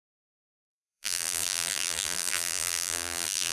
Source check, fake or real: fake